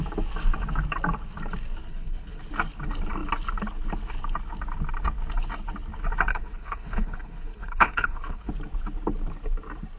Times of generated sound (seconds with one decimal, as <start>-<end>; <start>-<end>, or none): 1.8-2.4; 6.3-8.5